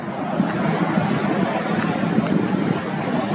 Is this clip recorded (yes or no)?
yes